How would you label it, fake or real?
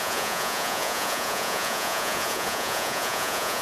fake